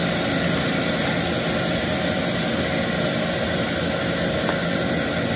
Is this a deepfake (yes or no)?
no